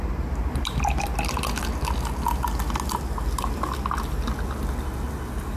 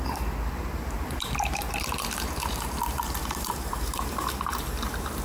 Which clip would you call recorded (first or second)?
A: first